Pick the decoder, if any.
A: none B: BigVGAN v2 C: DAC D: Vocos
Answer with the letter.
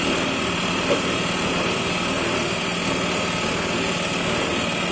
A